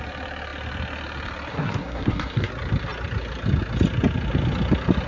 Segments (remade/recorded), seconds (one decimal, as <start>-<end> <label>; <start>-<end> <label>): 0.0-1.5 recorded; 1.5-2.5 remade; 2.5-5.1 recorded